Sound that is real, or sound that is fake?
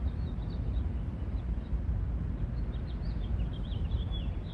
real